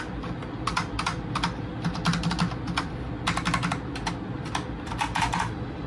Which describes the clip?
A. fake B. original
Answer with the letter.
B